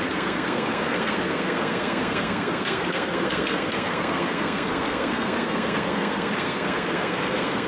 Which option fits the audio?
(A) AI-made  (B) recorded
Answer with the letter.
A